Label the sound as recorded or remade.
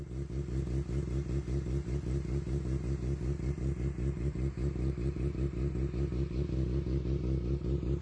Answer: recorded